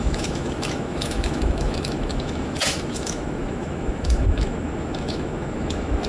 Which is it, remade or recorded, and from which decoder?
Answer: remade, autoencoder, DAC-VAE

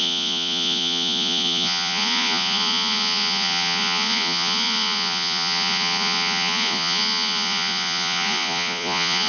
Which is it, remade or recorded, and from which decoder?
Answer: remade, vocoder, Vocos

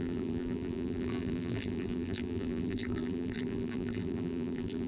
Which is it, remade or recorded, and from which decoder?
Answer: remade, vocoder, BigVGAN v2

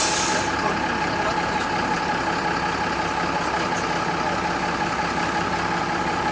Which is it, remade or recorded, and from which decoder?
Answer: recorded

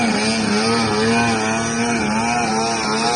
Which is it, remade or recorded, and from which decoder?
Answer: recorded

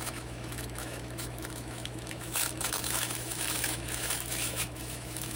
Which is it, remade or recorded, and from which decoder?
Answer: remade, autoencoder, DAC-VAE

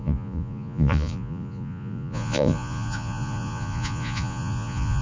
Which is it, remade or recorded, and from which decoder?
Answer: remade, vocoder, Vocos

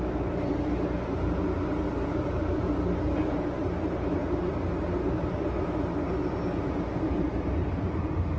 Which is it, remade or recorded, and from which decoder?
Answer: recorded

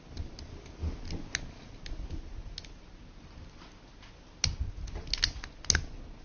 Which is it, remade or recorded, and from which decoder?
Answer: recorded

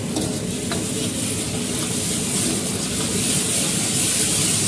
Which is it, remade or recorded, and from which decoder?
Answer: recorded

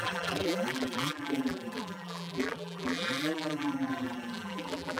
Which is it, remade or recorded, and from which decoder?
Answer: remade, vocoder, BigVGAN v2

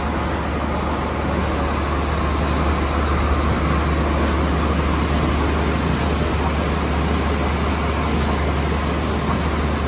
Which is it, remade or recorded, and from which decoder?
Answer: recorded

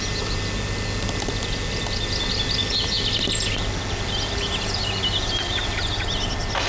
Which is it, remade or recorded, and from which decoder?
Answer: recorded